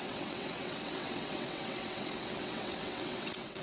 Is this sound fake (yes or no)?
yes